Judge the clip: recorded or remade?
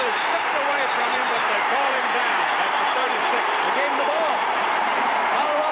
remade